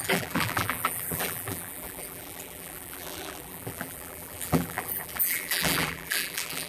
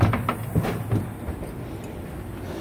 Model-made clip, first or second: first